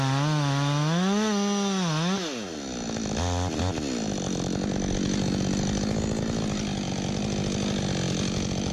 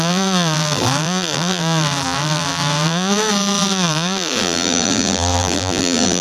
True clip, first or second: first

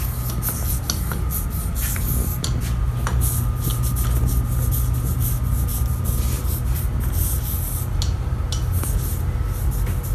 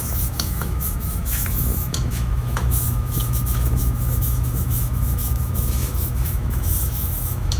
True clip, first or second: first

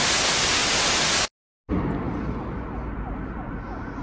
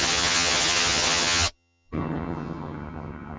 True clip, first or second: first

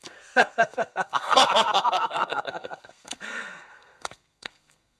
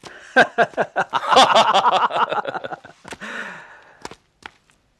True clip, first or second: second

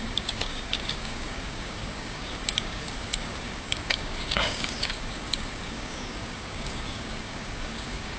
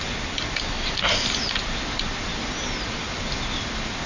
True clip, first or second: second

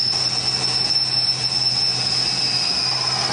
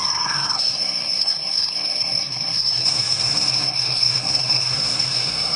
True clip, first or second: first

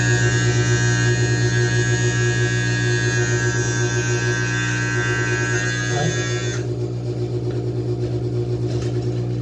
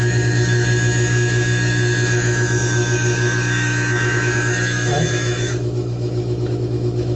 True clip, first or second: first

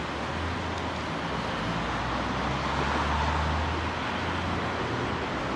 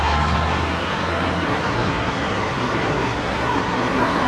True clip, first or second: first